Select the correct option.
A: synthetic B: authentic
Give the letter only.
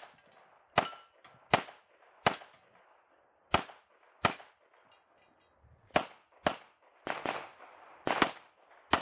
B